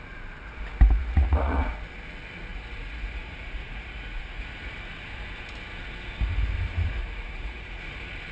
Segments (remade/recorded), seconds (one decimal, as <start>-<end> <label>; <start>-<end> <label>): 0.0-1.0 recorded; 1.0-1.7 remade; 1.7-2.5 recorded; 2.5-4.4 remade; 4.4-7.0 recorded; 7.0-7.8 remade; 7.8-8.3 recorded

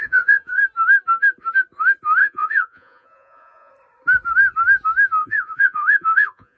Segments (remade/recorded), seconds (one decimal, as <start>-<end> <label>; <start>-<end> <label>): 0.0-0.6 remade; 0.6-2.2 recorded; 2.2-3.7 remade; 3.7-5.2 recorded; 5.2-6.6 remade

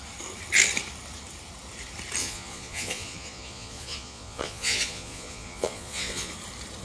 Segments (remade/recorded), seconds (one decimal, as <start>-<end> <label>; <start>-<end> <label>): 0.0-2.2 recorded; 2.2-6.3 remade; 6.3-6.8 recorded

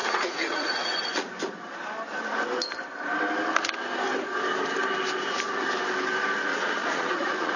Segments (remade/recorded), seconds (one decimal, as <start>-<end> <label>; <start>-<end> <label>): 0.0-1.3 remade; 1.3-6.5 recorded; 6.5-7.6 remade

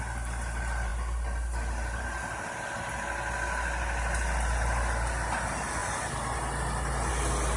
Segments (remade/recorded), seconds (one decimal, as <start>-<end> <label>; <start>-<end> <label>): 0.0-7.6 recorded